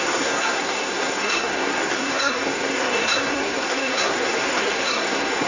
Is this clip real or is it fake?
fake